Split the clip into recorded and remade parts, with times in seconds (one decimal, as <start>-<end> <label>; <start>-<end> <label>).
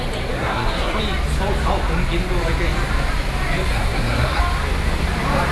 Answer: 0.0-0.4 recorded; 0.4-1.0 remade; 1.0-3.7 recorded; 3.7-4.4 remade; 4.4-5.5 recorded